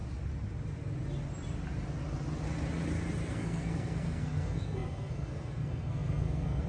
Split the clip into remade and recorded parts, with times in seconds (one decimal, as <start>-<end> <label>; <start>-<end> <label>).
0.0-3.3 recorded; 3.3-6.7 remade